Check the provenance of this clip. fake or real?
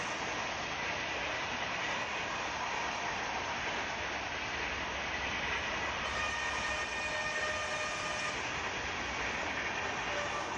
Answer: real